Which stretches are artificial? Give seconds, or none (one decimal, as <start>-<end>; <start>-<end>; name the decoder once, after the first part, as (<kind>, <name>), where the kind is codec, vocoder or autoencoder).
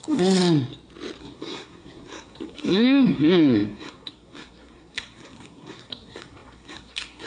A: 0.0-0.4 (codec, SNAC); 1.2-7.3